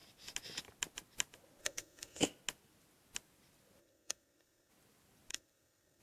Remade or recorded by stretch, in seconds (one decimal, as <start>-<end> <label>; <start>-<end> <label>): 0.0-1.6 recorded; 1.6-2.2 remade; 2.2-3.8 recorded; 3.8-4.7 remade; 4.7-5.3 recorded; 5.3-6.0 remade